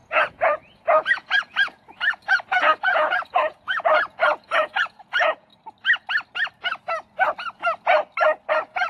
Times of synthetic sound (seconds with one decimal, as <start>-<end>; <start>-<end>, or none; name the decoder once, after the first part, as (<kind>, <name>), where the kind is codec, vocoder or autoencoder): 0.0-5.5 (vocoder, Vocos); 8.5-8.9